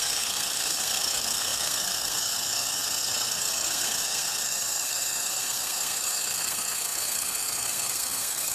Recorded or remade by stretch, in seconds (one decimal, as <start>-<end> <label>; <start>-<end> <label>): 0.0-8.5 remade